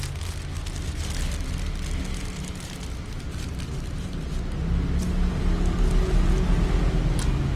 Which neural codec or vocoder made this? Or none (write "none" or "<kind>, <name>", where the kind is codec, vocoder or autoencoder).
none